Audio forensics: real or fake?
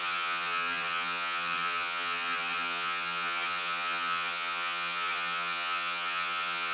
fake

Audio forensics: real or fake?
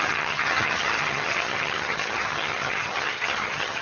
fake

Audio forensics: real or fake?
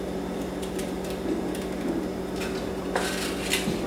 real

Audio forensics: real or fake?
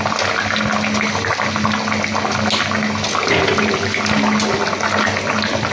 real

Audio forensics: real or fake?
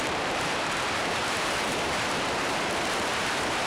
fake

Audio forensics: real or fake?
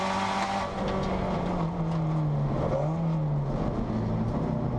real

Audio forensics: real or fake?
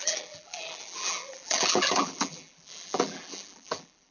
fake